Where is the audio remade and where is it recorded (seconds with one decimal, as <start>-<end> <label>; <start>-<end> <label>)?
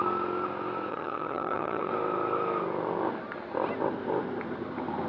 0.0-0.9 recorded; 0.9-1.9 remade; 1.9-5.1 recorded